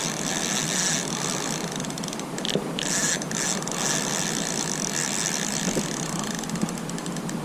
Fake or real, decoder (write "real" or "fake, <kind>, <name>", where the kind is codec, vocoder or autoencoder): real